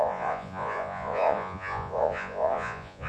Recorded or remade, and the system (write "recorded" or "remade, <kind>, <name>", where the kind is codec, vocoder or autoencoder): remade, vocoder, Vocos